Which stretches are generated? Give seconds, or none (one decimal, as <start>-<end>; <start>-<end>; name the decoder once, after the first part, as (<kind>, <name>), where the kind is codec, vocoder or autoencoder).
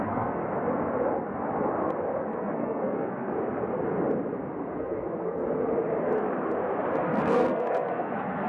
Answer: 0.0-0.4 (codec, SNAC); 2.2-3.3; 4.7-5.4; 7.2-8.5